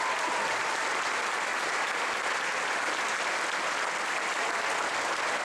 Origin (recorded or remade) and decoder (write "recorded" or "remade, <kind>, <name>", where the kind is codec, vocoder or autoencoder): recorded